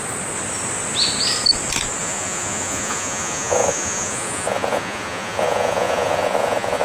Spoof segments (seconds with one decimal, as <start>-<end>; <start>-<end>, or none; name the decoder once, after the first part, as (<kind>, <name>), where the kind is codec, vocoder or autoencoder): 2.0-6.8 (vocoder, Vocos)